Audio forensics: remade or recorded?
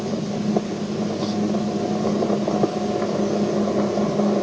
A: recorded